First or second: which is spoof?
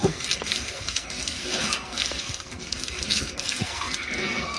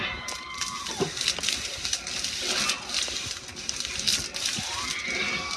first